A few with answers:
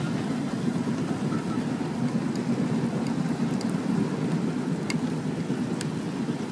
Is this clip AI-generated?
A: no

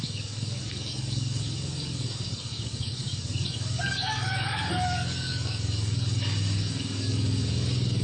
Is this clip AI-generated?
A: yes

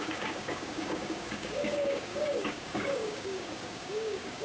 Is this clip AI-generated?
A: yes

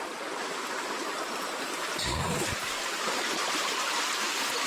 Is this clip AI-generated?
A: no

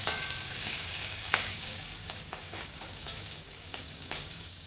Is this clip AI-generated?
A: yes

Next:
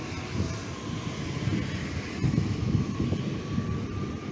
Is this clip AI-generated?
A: no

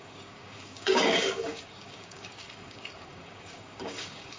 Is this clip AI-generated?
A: yes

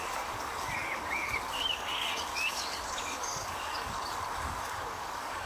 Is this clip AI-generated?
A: yes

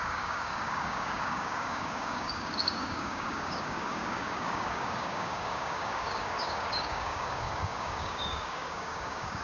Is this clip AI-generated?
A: yes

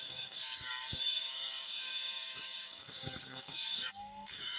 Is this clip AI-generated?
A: yes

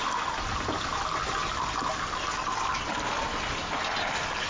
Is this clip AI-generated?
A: no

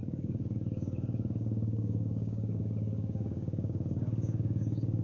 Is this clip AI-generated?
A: yes